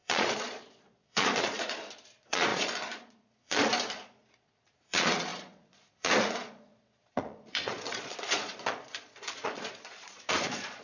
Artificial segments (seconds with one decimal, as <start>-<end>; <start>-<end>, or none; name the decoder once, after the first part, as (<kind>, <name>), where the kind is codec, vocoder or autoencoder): 0.0-10.8 (vocoder, Vocos)